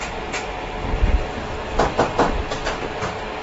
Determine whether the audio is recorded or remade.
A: recorded